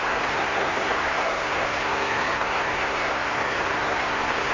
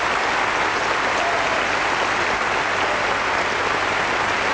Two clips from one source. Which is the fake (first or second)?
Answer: first